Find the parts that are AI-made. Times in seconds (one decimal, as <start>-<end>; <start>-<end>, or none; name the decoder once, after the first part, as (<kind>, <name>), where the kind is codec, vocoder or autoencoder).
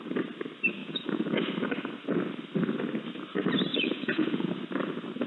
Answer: 0.8-1.4 (vocoder, Vocos); 3.7-4.5